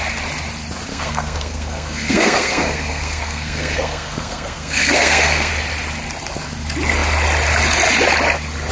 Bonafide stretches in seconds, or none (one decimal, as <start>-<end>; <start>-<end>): 0.0-0.9; 5.5-8.7